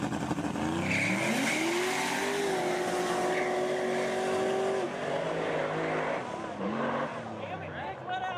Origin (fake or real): real